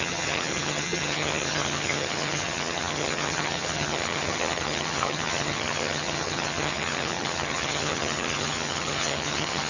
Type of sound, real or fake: fake